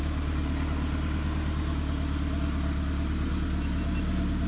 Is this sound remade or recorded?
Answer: recorded